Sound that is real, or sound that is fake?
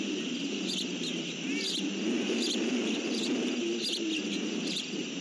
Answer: real